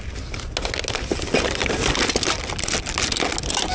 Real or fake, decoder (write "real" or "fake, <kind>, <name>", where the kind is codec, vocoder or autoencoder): real